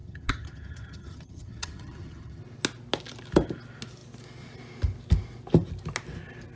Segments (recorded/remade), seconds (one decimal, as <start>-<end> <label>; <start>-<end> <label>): 0.0-2.4 remade; 2.4-6.6 recorded